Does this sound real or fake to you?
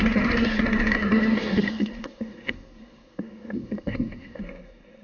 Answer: fake